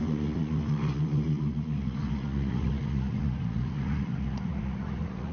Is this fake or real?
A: fake